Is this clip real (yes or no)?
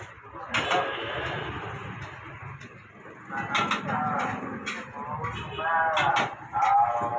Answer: yes